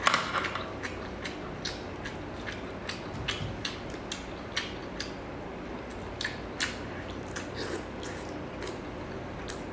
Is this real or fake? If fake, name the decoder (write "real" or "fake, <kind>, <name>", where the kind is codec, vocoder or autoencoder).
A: real